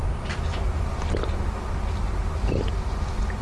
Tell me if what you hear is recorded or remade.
recorded